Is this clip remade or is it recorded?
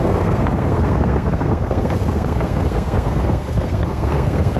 remade